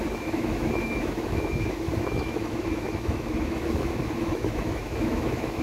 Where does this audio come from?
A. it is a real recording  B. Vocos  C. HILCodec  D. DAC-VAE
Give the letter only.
D